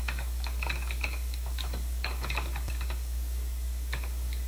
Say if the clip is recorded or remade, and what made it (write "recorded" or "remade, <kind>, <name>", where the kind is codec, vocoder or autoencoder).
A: remade, codec, DAC